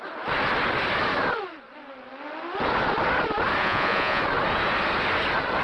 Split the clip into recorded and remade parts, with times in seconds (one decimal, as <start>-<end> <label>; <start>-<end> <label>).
0.0-3.6 recorded; 3.6-4.2 remade; 4.2-5.6 recorded